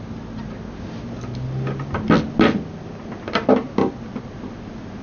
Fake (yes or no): no